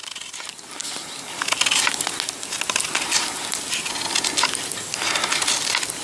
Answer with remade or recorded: recorded